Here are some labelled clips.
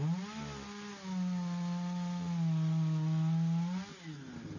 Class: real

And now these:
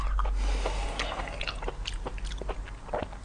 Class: real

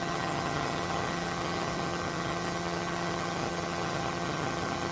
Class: fake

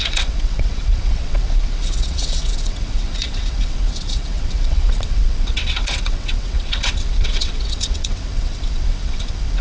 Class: fake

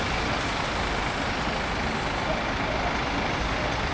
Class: real